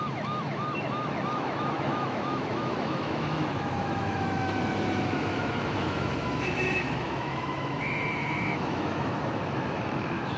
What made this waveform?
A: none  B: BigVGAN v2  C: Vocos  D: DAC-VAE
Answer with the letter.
D